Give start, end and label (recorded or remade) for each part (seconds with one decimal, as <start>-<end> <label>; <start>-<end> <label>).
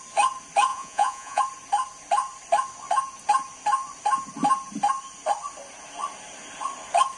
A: 0.0-0.7 recorded; 0.7-1.4 remade; 1.4-7.2 recorded